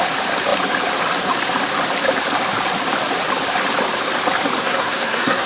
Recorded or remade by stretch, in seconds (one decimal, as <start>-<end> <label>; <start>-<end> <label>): 0.0-4.6 recorded; 4.6-5.5 remade